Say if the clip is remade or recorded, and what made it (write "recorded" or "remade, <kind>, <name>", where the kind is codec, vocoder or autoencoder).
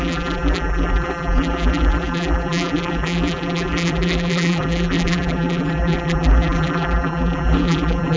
remade, vocoder, BigVGAN v2